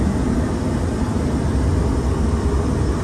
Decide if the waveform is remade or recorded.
recorded